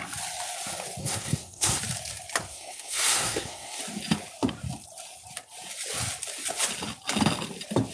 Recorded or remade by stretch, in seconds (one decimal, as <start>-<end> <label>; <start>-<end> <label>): 0.0-1.0 recorded; 1.0-1.8 remade; 1.8-2.5 recorded; 2.5-3.8 remade; 3.8-7.9 recorded

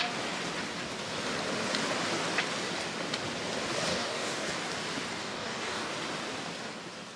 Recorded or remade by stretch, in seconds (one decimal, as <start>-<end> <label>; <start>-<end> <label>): 0.0-3.9 recorded; 3.9-4.6 remade; 4.6-5.2 recorded; 5.2-5.9 remade; 5.9-7.2 recorded

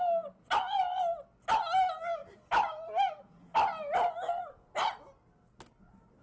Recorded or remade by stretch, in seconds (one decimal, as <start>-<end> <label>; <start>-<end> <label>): 0.0-6.2 recorded

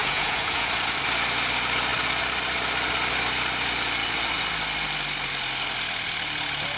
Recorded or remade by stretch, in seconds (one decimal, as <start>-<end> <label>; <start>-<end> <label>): 0.0-0.7 remade; 0.7-6.8 recorded

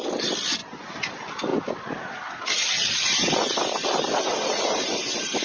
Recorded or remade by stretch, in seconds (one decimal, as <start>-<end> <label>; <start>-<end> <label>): 0.0-5.4 recorded